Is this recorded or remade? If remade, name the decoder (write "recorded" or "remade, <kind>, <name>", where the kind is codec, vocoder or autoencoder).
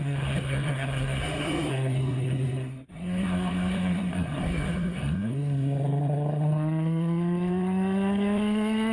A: remade, codec, SNAC